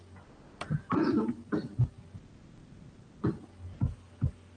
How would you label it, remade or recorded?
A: recorded